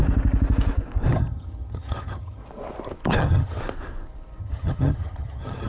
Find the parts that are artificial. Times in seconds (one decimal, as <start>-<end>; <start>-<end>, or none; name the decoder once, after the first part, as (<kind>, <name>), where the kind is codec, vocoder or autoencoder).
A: 1.1-2.4 (vocoder, HiFi-GAN); 3.2-3.6; 4.4-5.7